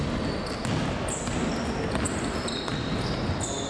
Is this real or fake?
real